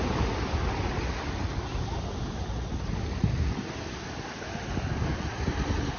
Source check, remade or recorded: recorded